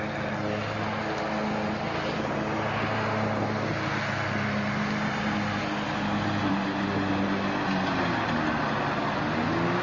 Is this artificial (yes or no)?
no